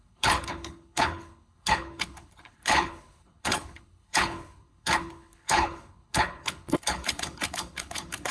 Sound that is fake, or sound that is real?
fake